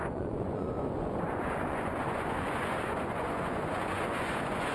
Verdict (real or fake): fake